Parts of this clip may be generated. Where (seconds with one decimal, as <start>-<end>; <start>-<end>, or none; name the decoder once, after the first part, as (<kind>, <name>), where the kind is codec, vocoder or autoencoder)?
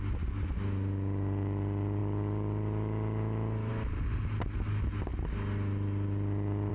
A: none